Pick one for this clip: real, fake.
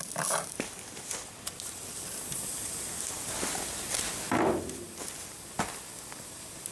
real